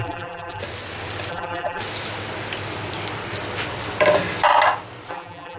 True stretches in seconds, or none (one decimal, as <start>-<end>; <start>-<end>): 0.6-1.3; 1.8-5.1